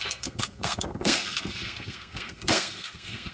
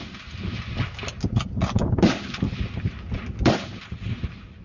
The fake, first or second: first